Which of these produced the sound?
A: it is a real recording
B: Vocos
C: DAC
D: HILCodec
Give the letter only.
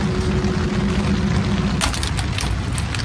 A